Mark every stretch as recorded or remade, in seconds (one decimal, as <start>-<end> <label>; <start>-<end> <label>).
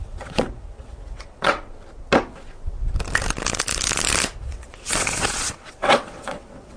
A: 0.0-1.7 remade; 1.7-4.4 recorded; 4.4-6.8 remade